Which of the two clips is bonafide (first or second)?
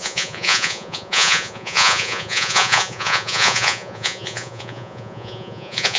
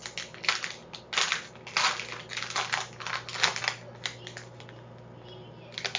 second